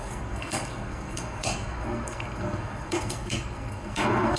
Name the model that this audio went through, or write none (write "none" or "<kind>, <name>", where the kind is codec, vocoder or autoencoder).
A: codec, SNAC